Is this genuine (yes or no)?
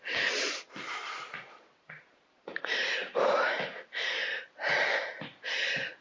yes